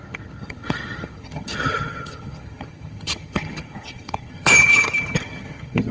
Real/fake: fake